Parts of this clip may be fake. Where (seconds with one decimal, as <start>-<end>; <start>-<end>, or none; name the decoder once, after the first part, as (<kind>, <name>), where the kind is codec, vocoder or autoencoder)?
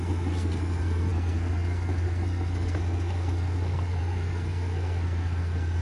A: 0.0-5.8 (codec, SNAC)